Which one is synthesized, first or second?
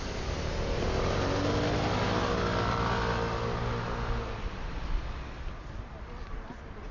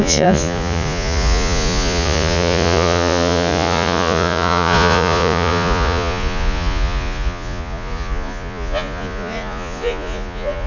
second